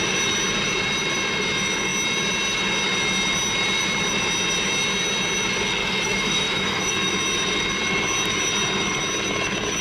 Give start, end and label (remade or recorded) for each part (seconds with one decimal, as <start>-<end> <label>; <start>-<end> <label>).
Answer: 0.0-5.8 recorded; 5.8-7.1 remade; 7.1-9.8 recorded